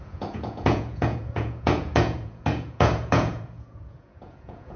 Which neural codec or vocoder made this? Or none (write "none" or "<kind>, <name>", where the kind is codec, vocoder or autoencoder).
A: vocoder, Vocos